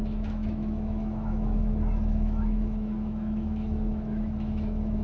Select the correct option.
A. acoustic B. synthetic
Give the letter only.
B